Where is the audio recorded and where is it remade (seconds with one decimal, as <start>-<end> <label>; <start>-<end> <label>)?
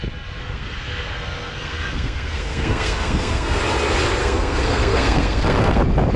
0.0-0.4 recorded; 0.4-3.6 remade; 3.6-4.2 recorded; 4.2-5.8 remade; 5.8-6.2 recorded